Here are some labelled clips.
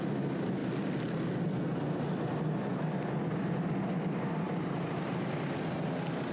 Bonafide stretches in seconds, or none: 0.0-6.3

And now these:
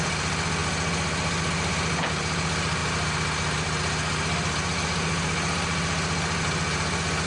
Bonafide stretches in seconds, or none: 0.0-7.3

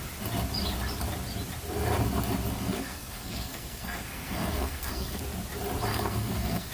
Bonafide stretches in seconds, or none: 0.0-2.5; 5.2-5.9

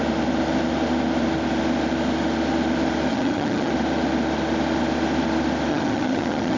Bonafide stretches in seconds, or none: 0.0-3.1; 3.7-5.7

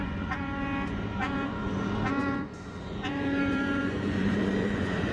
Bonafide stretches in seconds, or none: none

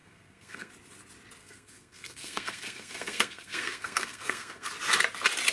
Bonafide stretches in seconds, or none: 0.7-1.4; 4.7-5.5

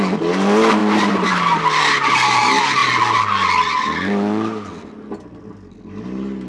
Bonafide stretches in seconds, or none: 0.0-0.8; 1.6-6.5

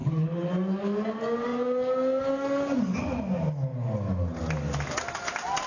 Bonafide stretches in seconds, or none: 0.5-5.7